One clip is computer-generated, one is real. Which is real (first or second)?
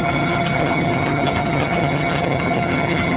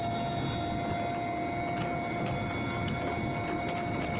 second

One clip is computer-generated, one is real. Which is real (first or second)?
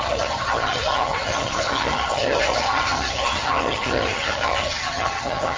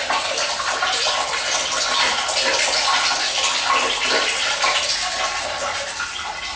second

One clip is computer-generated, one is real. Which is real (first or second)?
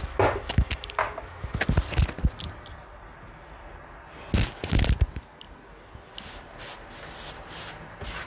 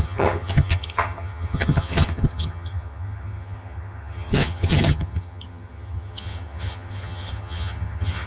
first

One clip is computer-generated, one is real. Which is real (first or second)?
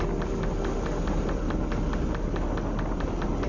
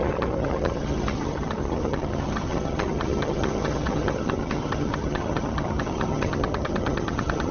first